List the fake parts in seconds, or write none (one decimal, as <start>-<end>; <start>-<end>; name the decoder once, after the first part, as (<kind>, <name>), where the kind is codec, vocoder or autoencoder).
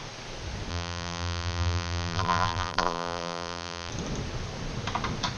0.7-3.9 (vocoder, BigVGAN v2)